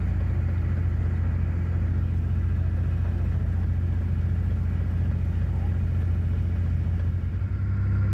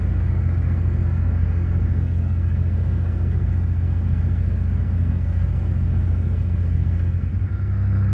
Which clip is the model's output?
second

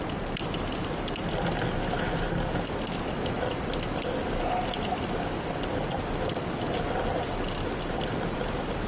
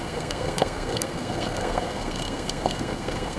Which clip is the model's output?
second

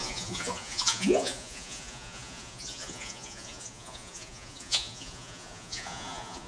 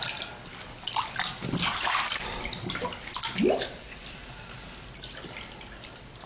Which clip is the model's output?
first